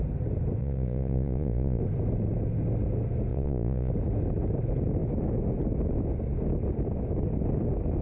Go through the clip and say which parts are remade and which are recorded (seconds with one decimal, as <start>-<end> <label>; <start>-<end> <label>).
0.0-0.6 recorded; 0.6-1.8 remade; 1.8-3.3 recorded; 3.3-3.9 remade; 3.9-8.0 recorded